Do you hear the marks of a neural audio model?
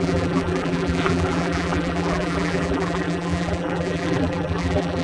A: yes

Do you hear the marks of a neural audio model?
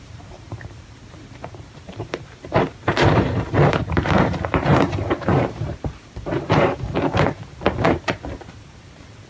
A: yes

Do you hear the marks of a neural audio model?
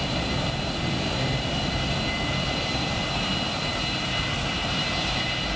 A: yes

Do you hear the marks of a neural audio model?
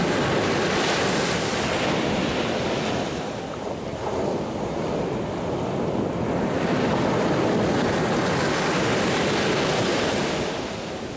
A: yes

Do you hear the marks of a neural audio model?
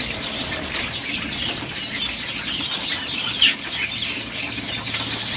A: yes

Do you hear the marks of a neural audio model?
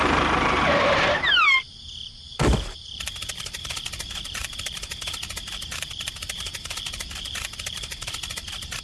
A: yes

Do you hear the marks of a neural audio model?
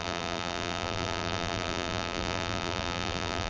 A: yes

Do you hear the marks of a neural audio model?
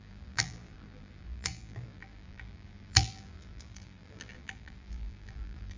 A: yes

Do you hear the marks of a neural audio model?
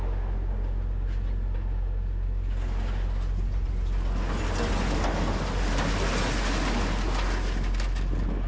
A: no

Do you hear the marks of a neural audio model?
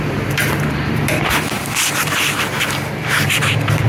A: yes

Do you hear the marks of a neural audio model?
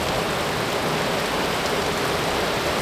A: no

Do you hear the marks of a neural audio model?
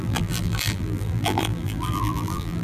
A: yes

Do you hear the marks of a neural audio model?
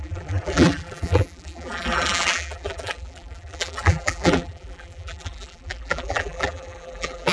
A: yes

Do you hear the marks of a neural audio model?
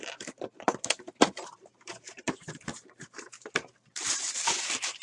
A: yes